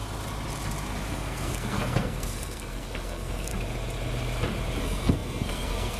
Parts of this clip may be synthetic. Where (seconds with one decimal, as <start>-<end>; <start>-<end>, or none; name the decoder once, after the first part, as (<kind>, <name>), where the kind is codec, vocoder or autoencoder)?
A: 1.1-3.5 (codec, SNAC); 4.8-6.0